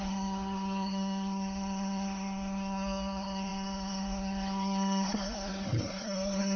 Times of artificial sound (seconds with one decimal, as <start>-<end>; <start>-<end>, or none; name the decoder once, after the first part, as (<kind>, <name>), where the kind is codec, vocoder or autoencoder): 0.0-6.6 (codec, SNAC)

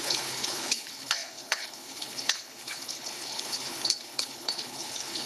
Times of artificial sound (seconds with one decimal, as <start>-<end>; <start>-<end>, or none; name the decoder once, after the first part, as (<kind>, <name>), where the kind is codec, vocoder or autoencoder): 0.0-5.3 (codec, HILCodec)

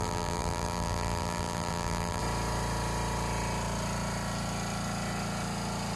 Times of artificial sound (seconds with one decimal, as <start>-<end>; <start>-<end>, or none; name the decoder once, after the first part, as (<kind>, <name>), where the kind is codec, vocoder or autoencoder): 0.0-2.2 (vocoder, BigVGAN v2)

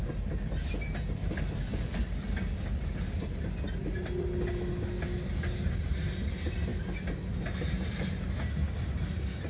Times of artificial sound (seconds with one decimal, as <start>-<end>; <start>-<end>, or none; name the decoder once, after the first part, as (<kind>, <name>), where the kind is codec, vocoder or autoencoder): none

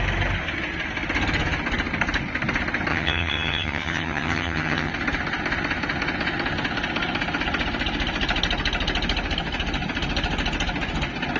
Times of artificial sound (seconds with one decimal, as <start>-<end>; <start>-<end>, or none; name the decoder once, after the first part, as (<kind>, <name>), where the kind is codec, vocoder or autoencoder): 2.9-4.9 (vocoder, HiFi-GAN)